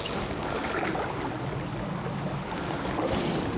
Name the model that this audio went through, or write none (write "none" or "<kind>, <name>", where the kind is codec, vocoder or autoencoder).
none